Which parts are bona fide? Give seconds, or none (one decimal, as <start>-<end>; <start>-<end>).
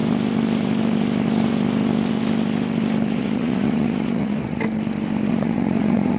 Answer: 0.0-3.2; 4.6-5.3